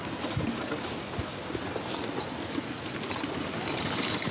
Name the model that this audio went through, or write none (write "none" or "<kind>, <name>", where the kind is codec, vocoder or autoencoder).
none